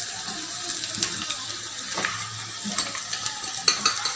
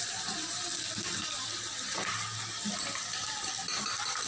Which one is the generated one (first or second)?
second